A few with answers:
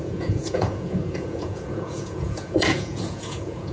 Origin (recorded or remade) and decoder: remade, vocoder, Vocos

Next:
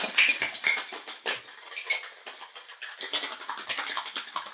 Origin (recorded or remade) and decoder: recorded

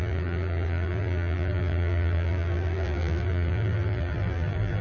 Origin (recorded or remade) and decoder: remade, vocoder, BigVGAN v2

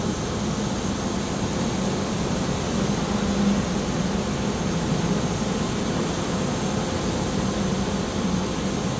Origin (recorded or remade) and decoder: recorded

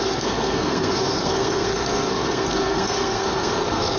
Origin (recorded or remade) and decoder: remade, codec, SNAC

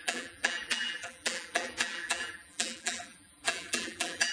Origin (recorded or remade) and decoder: remade, vocoder, BigVGAN v2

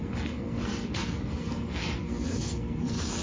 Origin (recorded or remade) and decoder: remade, codec, SNAC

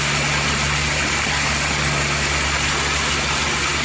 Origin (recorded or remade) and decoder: recorded